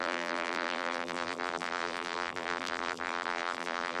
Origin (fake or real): fake